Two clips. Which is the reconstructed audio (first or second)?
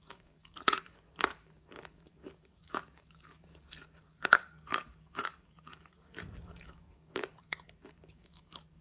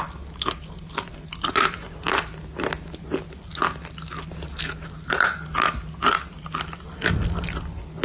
first